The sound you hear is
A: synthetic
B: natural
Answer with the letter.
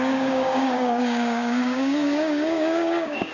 A